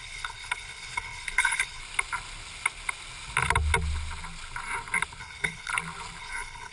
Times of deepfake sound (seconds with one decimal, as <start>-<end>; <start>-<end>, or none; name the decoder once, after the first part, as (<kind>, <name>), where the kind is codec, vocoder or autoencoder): 0.0-1.8 (codec, HILCodec); 5.2-5.7; 6.2-6.7